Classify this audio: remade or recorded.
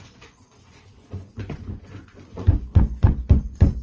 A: remade